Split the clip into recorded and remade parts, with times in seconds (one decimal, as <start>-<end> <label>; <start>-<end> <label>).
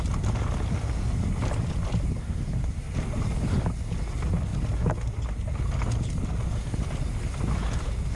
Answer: 0.0-8.2 recorded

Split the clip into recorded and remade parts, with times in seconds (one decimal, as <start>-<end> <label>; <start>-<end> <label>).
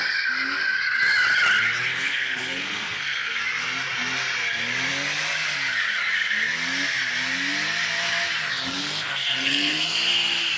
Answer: 0.0-1.9 recorded; 1.9-3.4 remade; 3.4-8.8 recorded; 8.8-9.9 remade; 9.9-10.6 recorded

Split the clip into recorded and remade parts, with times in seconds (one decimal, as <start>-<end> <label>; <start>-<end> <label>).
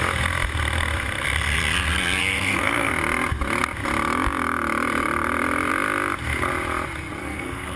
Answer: 0.0-2.2 recorded; 2.2-2.9 remade; 2.9-7.2 recorded; 7.2-7.8 remade